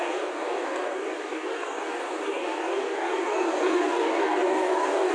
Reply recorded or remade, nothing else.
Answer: remade